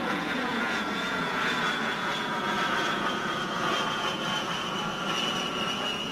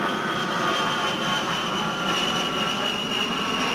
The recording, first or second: second